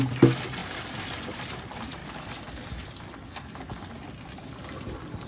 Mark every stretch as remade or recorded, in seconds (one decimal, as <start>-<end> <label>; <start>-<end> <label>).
0.0-5.3 recorded